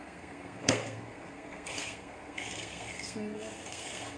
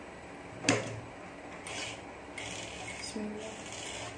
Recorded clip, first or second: second